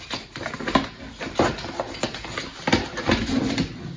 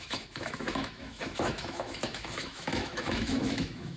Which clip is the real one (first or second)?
first